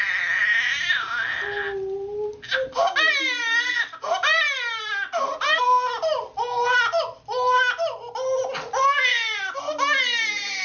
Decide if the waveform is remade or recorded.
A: recorded